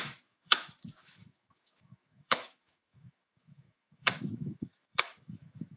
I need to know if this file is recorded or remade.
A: remade